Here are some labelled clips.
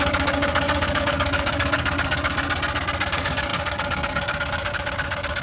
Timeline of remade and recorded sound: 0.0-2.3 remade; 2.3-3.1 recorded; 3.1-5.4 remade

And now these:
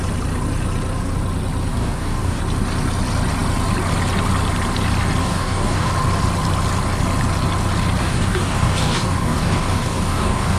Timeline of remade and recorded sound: 0.0-1.7 recorded; 1.7-2.4 remade; 2.4-5.2 recorded; 5.2-5.9 remade; 5.9-8.0 recorded; 8.0-10.6 remade

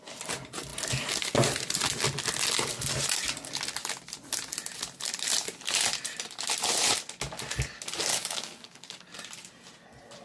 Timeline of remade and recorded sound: 0.0-8.1 recorded; 8.1-9.1 remade; 9.1-10.2 recorded

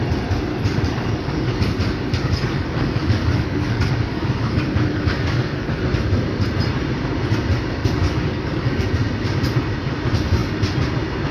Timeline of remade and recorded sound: 0.0-0.5 recorded; 0.5-5.8 remade; 5.8-7.8 recorded; 7.8-8.9 remade; 8.9-11.3 recorded

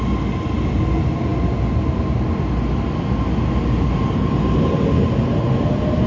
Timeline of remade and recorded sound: 0.0-6.1 recorded